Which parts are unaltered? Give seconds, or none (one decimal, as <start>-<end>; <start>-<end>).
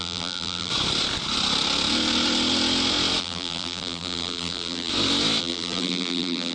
0.7-3.2; 4.9-5.4